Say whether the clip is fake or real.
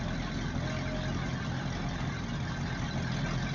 real